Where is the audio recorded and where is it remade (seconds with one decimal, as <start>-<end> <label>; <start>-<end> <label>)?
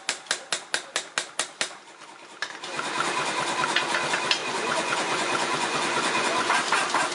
0.0-4.4 recorded; 4.4-6.5 remade; 6.5-7.1 recorded